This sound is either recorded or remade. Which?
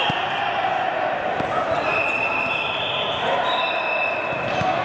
recorded